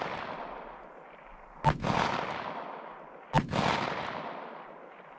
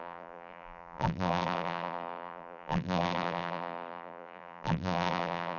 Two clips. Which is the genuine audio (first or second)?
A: first